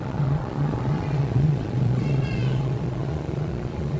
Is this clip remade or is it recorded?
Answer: remade